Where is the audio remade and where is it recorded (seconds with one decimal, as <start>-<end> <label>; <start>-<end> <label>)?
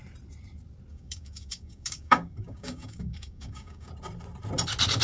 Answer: 0.0-0.9 recorded; 0.9-3.9 remade; 3.9-5.0 recorded